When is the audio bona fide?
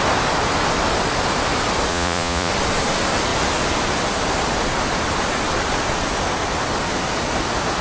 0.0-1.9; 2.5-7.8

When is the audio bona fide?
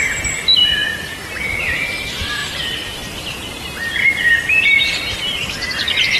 0.0-6.2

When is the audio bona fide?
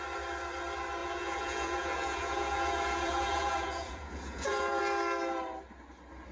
0.0-1.0; 4.8-6.3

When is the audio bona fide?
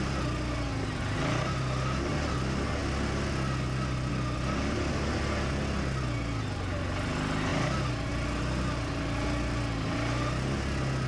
0.0-11.1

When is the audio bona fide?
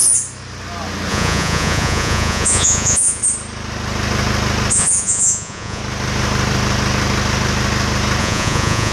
0.0-1.1; 3.2-4.7; 5.8-8.2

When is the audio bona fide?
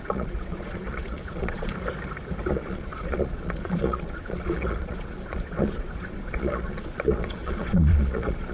1.7-2.5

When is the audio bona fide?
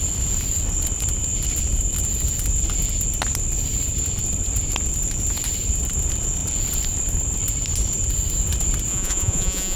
0.0-8.9